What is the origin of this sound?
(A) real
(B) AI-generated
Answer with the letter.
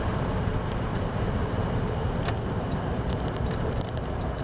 B